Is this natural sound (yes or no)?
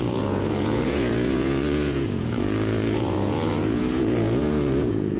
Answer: no